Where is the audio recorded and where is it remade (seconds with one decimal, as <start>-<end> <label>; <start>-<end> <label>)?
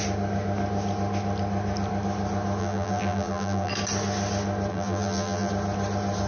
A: 0.0-2.6 recorded; 2.6-3.7 remade; 3.7-4.7 recorded; 4.7-5.5 remade; 5.5-6.3 recorded